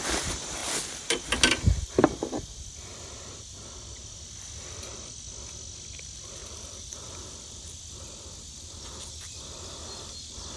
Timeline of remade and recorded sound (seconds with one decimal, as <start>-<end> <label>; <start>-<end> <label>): 0.0-4.0 recorded; 4.0-5.3 remade; 5.3-6.4 recorded; 6.4-6.9 remade; 6.9-10.6 recorded

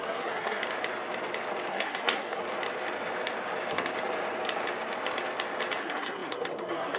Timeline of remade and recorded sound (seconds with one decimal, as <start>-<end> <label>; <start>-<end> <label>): 0.0-0.6 remade; 0.6-1.7 recorded; 1.7-2.4 remade; 2.4-5.8 recorded; 5.8-7.0 remade

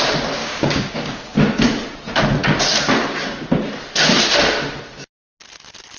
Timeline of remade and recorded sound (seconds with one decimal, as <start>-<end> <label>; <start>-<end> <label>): 0.0-0.4 recorded; 0.4-1.6 remade; 1.6-6.0 recorded

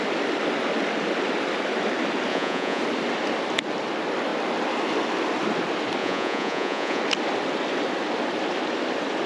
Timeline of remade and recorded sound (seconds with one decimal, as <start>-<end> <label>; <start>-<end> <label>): 0.0-2.3 recorded; 2.3-2.8 remade; 2.8-6.0 recorded; 6.0-7.0 remade; 7.0-9.3 recorded

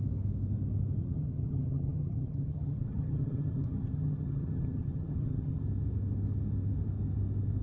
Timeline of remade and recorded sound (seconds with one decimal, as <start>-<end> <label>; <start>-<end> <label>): 0.0-1.0 recorded; 1.0-5.6 remade; 5.6-7.6 recorded

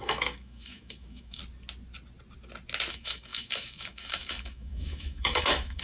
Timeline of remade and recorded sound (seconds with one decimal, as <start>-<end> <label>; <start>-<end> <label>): 0.0-1.4 remade; 1.4-2.9 recorded; 2.9-5.8 remade